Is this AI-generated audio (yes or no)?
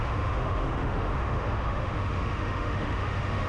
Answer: yes